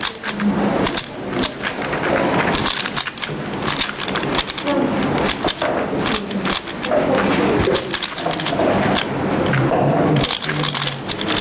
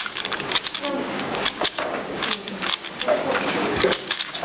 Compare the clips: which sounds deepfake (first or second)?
second